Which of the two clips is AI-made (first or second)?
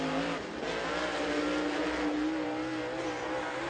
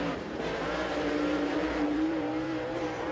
second